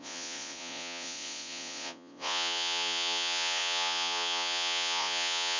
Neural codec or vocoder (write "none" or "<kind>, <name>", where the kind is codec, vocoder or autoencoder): vocoder, Vocos